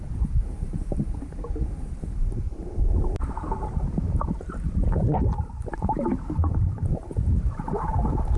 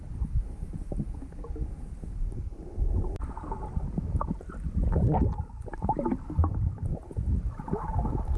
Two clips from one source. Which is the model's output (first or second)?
first